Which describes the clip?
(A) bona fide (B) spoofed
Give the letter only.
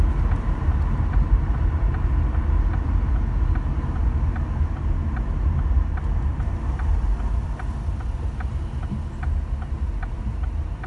A